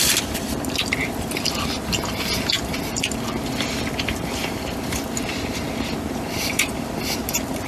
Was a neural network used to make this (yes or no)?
yes